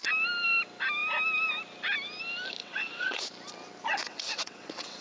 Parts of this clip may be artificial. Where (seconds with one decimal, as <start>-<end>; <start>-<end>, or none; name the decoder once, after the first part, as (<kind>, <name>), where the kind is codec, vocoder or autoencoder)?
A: 2.6-3.2 (vocoder, WaveNeXt); 4.0-5.0